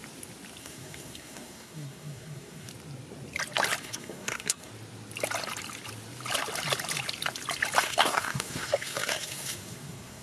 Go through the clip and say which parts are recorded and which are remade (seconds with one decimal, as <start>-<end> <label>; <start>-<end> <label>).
0.0-0.6 recorded; 0.6-2.7 remade; 2.7-3.8 recorded; 3.8-4.7 remade; 4.7-7.8 recorded; 7.8-10.2 remade